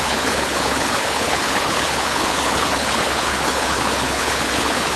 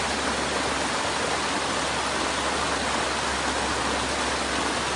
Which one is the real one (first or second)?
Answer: second